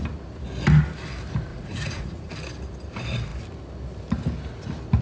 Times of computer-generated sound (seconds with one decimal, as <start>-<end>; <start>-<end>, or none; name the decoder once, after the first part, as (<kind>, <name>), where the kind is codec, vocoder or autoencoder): 1.5-2.3 (vocoder, Vocos)